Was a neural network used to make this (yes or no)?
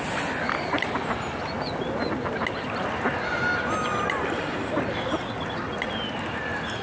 no